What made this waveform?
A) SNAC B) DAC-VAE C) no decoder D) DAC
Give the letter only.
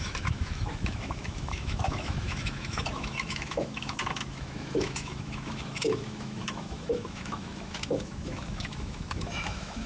B